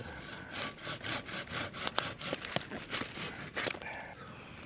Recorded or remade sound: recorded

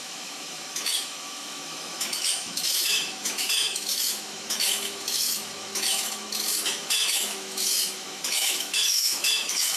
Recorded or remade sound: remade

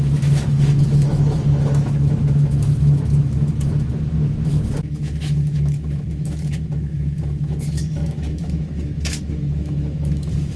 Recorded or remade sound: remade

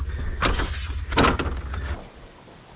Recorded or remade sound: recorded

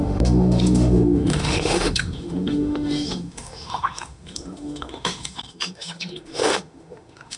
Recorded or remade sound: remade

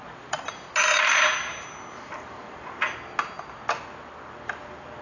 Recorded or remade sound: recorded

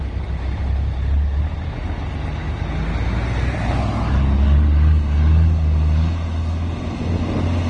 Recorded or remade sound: recorded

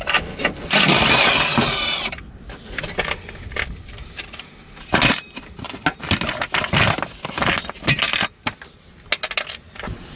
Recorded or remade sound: recorded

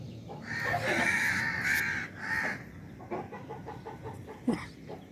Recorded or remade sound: recorded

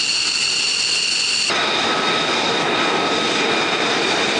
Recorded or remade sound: recorded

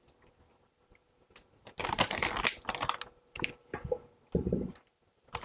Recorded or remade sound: recorded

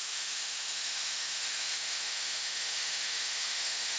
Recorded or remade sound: remade